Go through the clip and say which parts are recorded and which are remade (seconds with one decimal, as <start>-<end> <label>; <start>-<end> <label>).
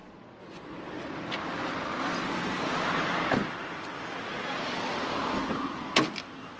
0.0-6.6 recorded